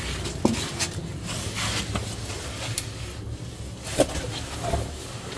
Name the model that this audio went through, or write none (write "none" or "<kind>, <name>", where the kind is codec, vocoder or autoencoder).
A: none